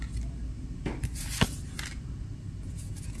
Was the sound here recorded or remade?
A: recorded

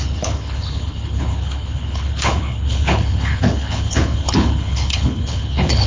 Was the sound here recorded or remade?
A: remade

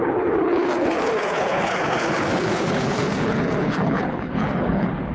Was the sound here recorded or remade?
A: remade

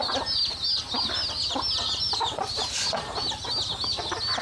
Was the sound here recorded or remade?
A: recorded